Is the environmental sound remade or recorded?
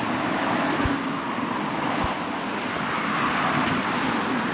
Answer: recorded